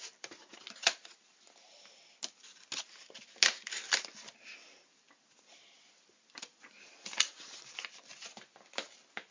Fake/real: real